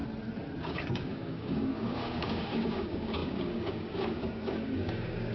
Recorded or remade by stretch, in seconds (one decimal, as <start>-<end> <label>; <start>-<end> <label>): 0.0-0.6 recorded; 0.6-5.3 remade